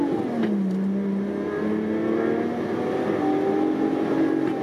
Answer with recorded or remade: recorded